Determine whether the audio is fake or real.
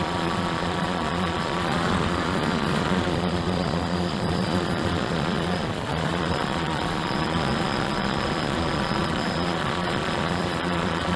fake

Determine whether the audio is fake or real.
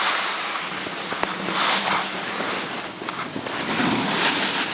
real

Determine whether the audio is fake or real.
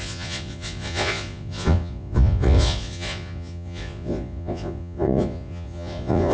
fake